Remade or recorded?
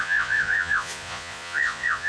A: remade